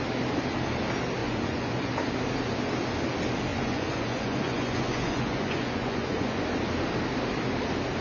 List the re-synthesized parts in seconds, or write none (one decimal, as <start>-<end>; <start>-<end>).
1.2-1.9; 3.5-6.4